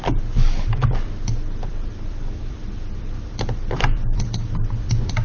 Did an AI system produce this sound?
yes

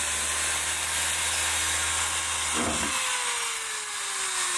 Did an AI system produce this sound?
no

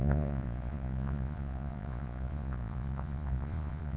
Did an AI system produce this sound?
yes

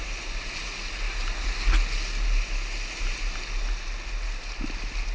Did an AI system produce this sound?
no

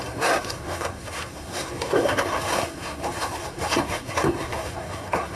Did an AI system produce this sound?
yes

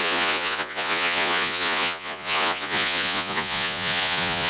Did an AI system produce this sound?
yes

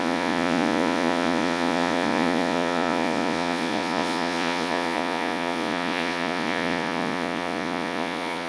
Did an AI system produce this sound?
yes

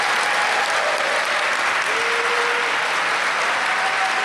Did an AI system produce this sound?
no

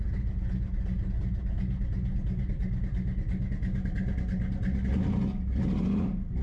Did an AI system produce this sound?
no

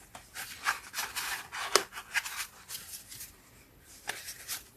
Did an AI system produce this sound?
no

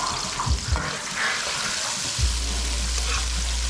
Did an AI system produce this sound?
no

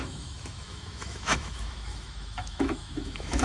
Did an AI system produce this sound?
yes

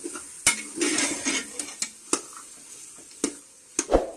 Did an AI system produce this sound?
no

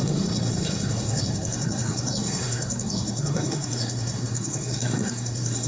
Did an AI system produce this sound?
yes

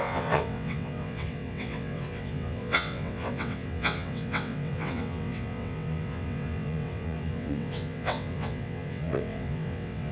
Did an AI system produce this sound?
yes